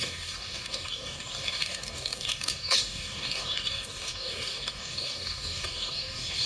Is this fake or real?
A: fake